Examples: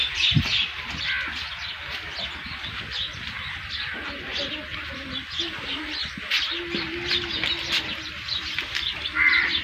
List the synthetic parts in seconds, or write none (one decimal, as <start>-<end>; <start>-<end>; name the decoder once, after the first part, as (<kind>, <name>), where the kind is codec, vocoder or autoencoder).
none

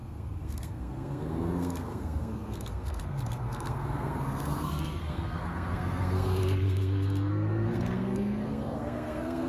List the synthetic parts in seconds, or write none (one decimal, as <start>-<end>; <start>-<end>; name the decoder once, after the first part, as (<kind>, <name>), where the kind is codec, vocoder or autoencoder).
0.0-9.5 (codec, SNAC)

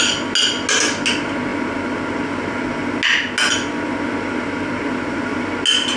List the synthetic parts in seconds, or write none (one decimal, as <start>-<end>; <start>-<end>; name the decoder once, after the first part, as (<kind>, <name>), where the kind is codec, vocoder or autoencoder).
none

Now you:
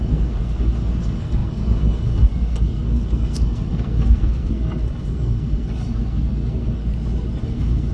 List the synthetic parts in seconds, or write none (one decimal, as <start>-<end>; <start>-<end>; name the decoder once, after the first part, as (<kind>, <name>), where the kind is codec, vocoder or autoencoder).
0.0-6.8 (codec, SNAC); 7.4-7.9

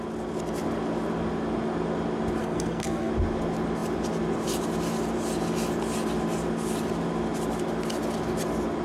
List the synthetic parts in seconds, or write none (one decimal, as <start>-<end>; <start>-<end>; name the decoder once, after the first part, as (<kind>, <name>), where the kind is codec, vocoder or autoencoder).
2.4-3.1 (codec, SNAC)